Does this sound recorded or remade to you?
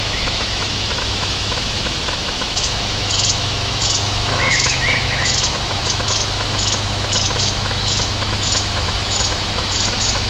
remade